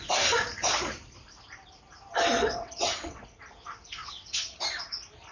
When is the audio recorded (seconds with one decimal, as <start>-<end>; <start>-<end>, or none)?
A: 0.0-2.4; 3.2-4.0; 4.6-5.3